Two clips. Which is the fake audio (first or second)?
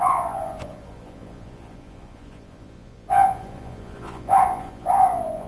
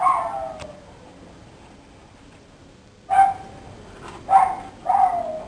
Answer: first